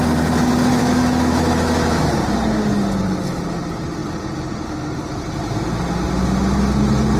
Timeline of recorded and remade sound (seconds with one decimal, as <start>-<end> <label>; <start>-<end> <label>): 0.0-0.8 recorded; 0.8-2.0 remade; 2.0-7.2 recorded